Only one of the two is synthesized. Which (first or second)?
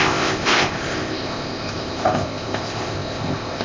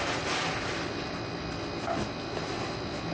first